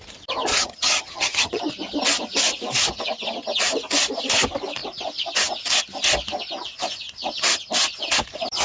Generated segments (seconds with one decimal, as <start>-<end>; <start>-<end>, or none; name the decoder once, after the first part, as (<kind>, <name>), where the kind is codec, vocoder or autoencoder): 0.5-1.6 (vocoder, HiFi-GAN)